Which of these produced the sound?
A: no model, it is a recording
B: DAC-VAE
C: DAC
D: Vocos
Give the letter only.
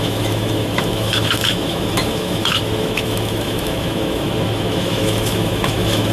B